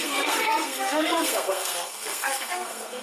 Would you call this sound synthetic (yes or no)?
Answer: yes